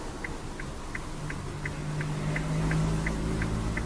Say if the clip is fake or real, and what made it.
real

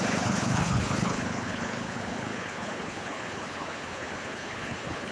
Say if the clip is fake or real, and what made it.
fake, codec, HILCodec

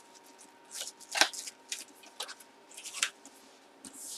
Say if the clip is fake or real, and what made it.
real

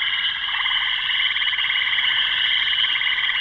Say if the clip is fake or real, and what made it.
fake, vocoder, Vocos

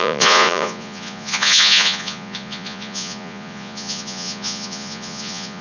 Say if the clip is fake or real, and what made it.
fake, vocoder, Vocos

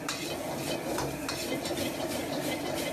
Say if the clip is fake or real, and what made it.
real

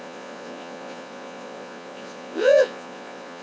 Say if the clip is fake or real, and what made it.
fake, vocoder, Vocos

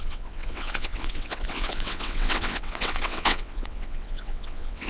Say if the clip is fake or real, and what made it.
fake, vocoder, WaveNeXt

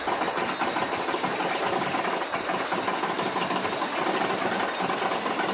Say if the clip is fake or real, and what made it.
real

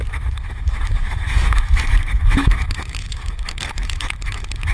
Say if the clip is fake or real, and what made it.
fake, autoencoder, DAC-VAE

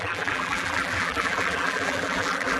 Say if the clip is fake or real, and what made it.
fake, vocoder, BigVGAN v2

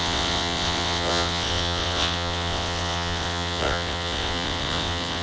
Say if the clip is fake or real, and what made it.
fake, vocoder, WaveNeXt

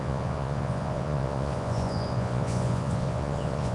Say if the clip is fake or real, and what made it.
fake, vocoder, Vocos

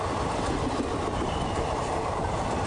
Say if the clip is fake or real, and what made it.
real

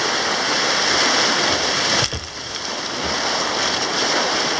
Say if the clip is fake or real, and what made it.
real